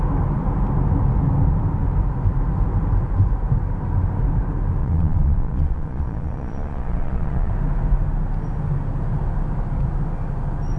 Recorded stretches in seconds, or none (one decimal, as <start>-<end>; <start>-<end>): 0.0-4.8; 7.5-10.8